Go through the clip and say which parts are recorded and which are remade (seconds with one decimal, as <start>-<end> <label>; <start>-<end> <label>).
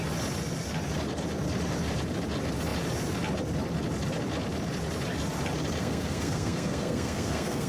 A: 0.0-5.8 recorded; 5.8-7.7 remade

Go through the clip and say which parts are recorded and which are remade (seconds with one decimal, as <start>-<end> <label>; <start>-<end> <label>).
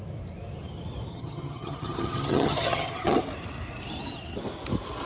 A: 0.0-1.1 recorded; 1.1-3.2 remade; 3.2-5.1 recorded